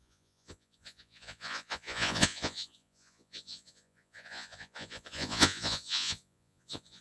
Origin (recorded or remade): remade